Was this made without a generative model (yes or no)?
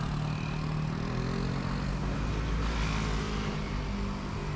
yes